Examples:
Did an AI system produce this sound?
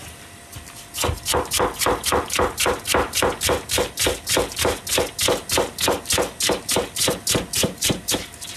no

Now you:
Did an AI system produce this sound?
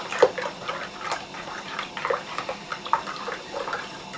yes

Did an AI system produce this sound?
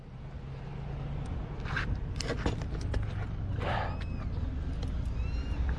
no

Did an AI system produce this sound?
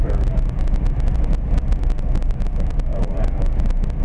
no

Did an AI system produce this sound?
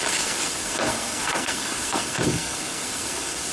yes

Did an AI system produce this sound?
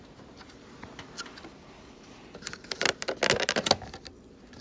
no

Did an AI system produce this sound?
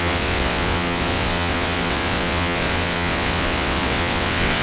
yes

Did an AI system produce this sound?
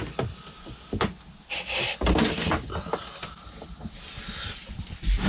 no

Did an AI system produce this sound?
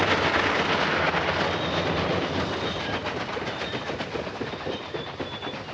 no